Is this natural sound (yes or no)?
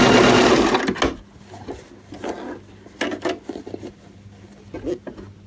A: yes